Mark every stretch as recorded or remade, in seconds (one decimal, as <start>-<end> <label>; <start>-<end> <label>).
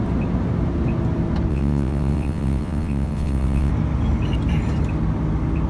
0.0-1.5 recorded; 1.5-3.7 remade; 3.7-5.7 recorded